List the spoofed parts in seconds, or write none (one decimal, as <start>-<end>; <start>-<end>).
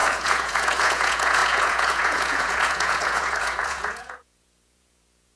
0.0-5.4